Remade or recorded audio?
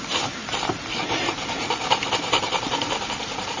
remade